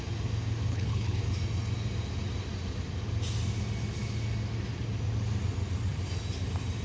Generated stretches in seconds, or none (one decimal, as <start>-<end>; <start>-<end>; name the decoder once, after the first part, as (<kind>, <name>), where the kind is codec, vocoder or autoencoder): 0.7-1.2 (codec, HILCodec)